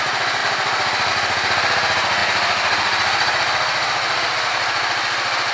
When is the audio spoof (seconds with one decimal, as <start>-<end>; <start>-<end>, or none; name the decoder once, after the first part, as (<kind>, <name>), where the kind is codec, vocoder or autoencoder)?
none